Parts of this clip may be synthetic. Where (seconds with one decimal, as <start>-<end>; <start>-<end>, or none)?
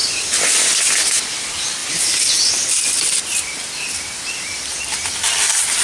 none